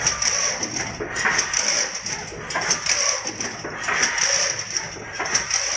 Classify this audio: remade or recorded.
recorded